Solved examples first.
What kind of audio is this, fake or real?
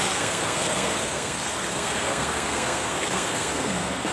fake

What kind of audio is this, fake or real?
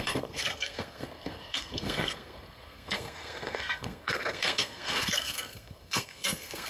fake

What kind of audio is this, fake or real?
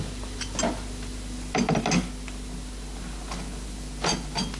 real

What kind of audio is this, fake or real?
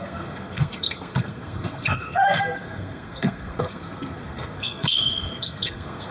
fake